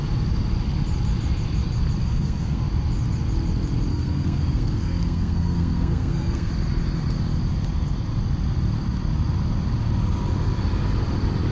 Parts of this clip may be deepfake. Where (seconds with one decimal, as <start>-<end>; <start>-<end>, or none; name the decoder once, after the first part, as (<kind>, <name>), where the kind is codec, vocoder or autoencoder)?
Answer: 2.0-2.6 (codec, SNAC); 3.9-6.5

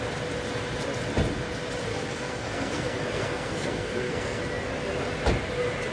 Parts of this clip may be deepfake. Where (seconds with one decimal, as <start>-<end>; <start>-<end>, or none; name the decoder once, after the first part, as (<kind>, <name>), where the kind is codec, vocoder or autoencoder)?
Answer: 1.9-4.4 (codec, SNAC)

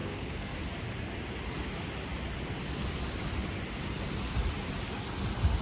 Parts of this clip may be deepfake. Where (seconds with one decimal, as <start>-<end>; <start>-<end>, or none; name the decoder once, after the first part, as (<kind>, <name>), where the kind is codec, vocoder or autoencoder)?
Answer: 0.0-0.6 (codec, SNAC)

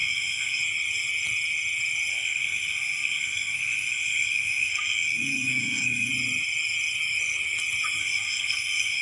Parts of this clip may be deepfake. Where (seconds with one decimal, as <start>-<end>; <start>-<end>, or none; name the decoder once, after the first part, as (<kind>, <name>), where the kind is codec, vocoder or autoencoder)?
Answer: 0.0-0.6 (codec, SNAC); 2.1-6.1; 8.0-9.0

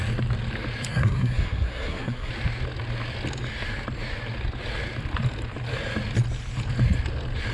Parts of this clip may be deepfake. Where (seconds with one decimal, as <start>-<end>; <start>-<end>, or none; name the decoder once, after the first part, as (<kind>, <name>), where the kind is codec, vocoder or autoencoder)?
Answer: 0.9-2.3 (codec, SNAC)